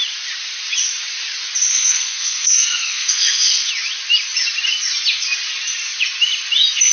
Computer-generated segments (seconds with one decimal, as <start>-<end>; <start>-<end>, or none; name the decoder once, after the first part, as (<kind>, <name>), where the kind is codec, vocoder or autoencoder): 1.7-3.7 (codec, SNAC)